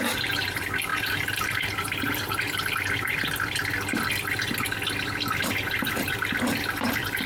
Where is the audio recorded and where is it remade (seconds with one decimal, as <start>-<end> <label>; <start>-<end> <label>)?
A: 0.0-3.1 remade; 3.1-5.3 recorded; 5.3-7.3 remade